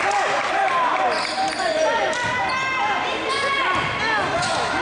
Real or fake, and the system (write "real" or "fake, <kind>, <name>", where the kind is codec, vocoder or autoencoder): real